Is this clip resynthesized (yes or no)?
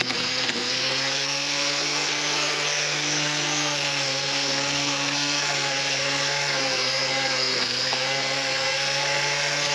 yes